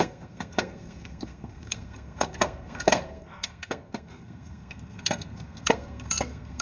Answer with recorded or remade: remade